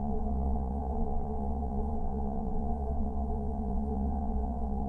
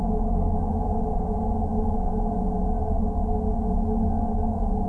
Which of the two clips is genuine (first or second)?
second